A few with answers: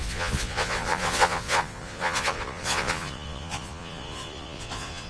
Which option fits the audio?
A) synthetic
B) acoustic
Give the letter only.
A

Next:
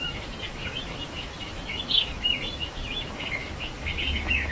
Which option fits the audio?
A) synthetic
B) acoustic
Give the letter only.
A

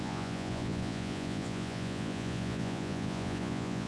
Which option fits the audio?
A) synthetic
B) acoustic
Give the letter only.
A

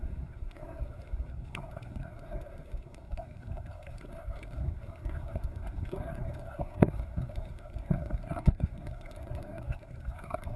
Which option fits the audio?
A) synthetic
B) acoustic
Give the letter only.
A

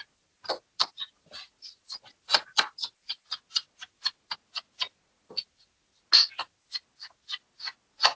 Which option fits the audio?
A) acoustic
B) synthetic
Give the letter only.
A